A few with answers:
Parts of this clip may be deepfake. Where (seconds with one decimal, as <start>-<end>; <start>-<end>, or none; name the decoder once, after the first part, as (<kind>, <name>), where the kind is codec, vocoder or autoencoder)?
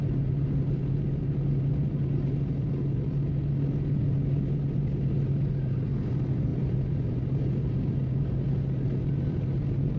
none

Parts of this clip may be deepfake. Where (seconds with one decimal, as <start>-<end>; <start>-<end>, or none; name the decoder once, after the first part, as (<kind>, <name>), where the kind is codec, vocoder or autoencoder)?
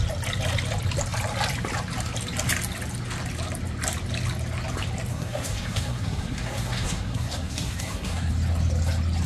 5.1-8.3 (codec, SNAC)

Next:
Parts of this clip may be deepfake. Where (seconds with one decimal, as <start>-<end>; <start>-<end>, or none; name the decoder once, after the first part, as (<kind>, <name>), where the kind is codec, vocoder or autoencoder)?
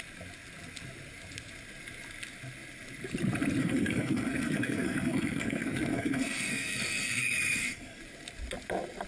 3.6-8.0 (codec, SNAC)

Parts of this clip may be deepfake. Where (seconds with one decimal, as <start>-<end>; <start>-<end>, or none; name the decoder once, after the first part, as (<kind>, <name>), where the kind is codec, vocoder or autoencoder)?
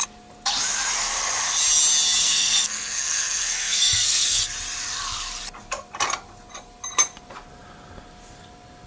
2.2-4.4 (codec, SNAC)